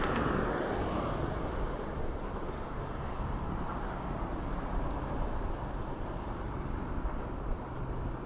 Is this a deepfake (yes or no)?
no